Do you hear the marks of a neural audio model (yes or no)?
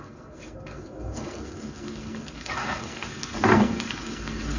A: yes